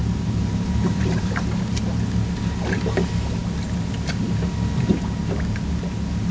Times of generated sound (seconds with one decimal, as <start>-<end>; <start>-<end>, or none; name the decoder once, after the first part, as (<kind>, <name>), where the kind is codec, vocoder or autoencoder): 0.0-2.0 (vocoder, BigVGAN v2)